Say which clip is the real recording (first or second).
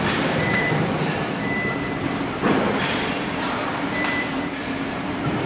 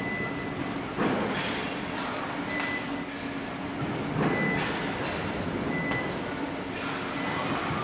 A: second